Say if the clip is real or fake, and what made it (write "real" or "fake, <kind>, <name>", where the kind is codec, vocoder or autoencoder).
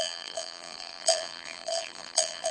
fake, vocoder, BigVGAN v2